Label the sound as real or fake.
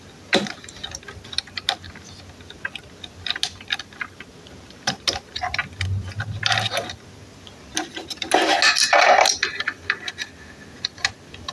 real